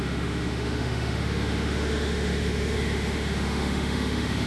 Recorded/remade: remade